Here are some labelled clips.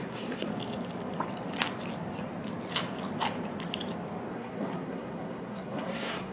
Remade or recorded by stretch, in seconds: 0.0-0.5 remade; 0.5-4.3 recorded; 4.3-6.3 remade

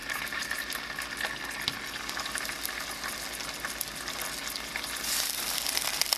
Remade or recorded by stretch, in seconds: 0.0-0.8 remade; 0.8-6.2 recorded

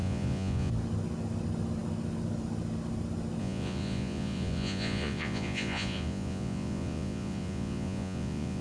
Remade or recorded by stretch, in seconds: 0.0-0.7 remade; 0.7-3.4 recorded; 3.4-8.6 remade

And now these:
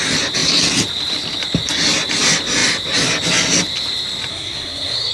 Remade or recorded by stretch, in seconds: 0.0-4.3 recorded; 4.3-5.1 remade

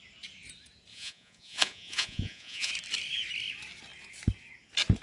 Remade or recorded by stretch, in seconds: 0.0-0.9 recorded; 0.9-2.7 remade; 2.7-5.0 recorded

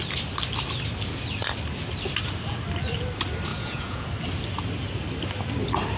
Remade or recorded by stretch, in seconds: 0.0-3.5 recorded; 3.5-4.1 remade; 4.1-6.0 recorded